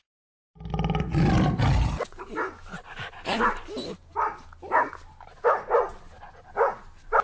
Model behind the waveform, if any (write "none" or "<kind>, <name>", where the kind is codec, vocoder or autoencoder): none